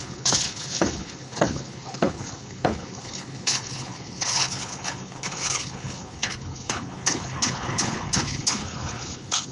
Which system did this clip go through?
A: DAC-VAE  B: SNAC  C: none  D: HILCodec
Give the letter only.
D